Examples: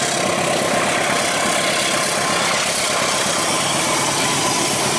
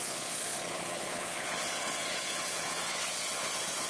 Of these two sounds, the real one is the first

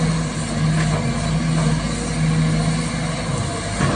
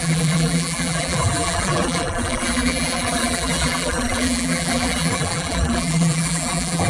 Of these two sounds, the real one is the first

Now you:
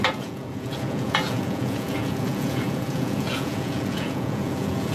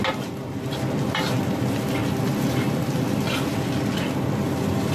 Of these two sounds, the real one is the second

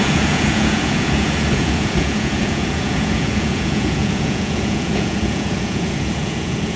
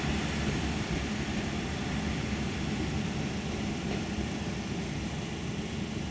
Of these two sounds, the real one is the second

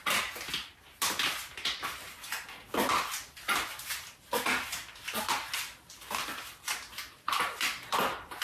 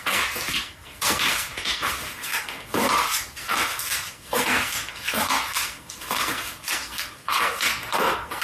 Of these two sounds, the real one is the first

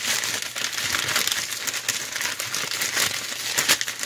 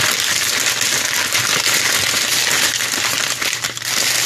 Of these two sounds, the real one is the first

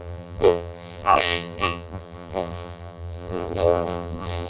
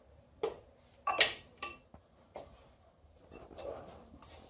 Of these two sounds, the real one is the second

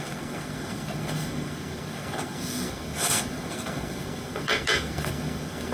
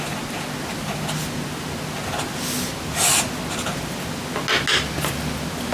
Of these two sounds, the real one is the second